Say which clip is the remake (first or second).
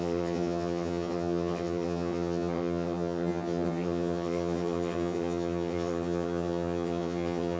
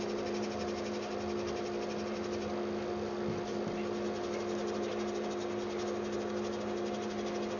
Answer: first